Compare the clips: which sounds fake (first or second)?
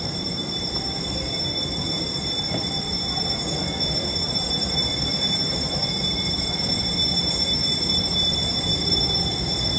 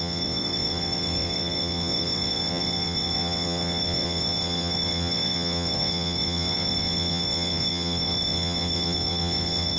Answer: second